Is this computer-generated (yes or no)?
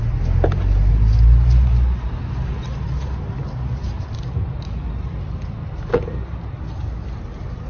no